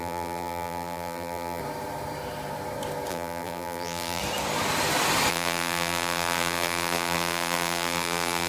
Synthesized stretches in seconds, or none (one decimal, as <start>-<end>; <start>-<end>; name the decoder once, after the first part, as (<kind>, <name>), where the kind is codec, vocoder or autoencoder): 0.0-1.6 (vocoder, BigVGAN v2); 3.1-4.2; 5.3-8.5